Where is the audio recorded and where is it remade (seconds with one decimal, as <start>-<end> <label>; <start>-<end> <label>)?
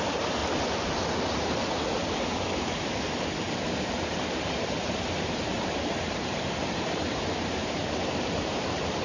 0.0-0.4 remade; 0.4-1.2 recorded; 1.2-9.0 remade